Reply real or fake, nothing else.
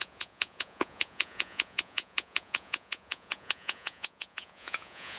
fake